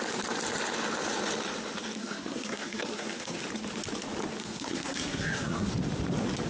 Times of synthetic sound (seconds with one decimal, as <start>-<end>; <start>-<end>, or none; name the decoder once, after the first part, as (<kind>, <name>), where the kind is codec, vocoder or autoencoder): 2.0-3.4 (codec, SNAC); 4.4-5.7